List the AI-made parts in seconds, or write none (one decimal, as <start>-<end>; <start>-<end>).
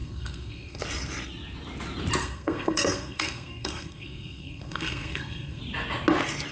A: 0.0-0.8; 2.2-5.6